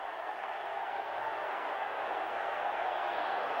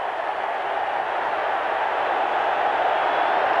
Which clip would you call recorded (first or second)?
second